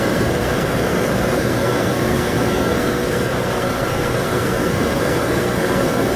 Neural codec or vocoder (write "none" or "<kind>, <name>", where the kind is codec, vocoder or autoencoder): codec, SNAC